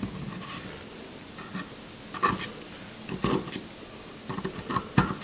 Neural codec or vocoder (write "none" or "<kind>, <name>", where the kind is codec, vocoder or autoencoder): none